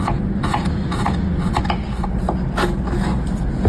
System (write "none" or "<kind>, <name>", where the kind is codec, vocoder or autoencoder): none